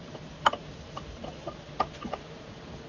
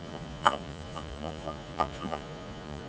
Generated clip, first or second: second